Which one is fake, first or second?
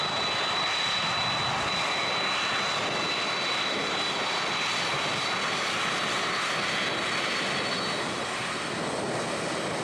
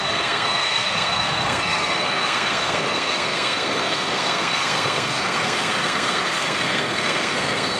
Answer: second